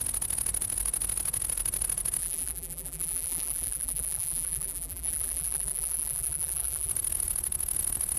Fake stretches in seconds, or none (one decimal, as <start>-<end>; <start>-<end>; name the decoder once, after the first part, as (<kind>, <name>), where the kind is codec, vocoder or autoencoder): 2.2-6.9 (vocoder, BigVGAN v2)